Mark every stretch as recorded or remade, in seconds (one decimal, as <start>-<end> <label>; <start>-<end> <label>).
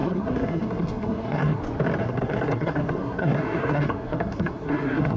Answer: 0.0-1.6 remade; 1.6-2.0 recorded; 2.0-5.2 remade